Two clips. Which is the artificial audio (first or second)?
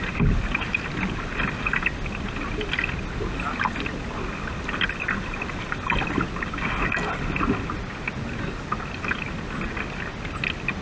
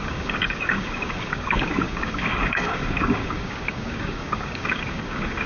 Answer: second